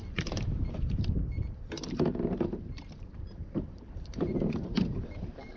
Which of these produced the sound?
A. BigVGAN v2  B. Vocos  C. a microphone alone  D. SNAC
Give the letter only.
A